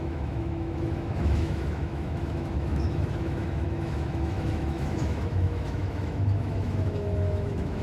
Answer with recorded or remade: remade